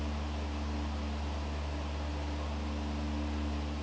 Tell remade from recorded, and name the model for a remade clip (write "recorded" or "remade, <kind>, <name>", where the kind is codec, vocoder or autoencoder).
recorded